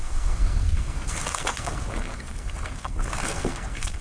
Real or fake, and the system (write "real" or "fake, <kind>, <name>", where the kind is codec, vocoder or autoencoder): fake, codec, SNAC